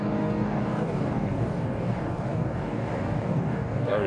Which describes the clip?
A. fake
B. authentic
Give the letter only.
A